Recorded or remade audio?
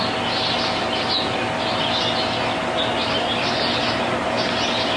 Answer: recorded